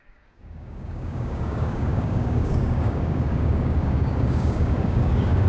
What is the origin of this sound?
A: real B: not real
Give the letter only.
B